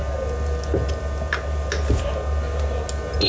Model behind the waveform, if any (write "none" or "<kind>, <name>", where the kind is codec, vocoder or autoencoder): none